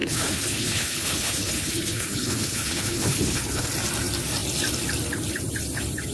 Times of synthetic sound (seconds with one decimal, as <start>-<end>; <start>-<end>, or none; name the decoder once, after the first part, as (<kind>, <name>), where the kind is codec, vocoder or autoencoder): 0.0-3.7 (codec, HILCodec)